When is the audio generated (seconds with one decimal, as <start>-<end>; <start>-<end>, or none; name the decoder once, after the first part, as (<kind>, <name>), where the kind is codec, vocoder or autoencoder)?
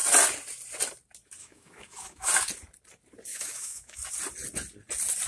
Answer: 1.4-2.3 (autoencoder, DAC-VAE); 3.3-4.0